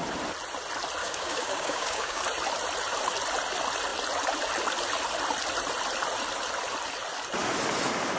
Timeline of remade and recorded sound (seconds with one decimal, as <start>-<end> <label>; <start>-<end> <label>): 0.0-1.0 recorded; 1.0-2.2 remade; 2.2-8.2 recorded